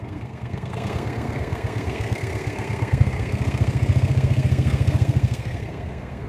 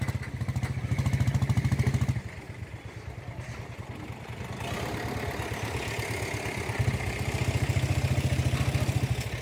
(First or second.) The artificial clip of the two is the first